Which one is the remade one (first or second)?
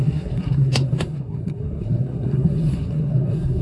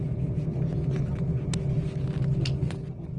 first